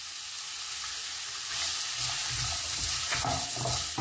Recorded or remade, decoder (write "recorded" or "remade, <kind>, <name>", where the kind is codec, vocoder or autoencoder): recorded